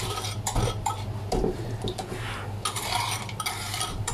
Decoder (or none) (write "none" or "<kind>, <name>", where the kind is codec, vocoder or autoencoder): none